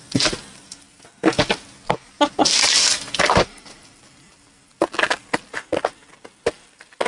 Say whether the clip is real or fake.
real